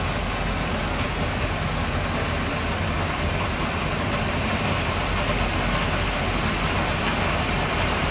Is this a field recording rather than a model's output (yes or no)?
yes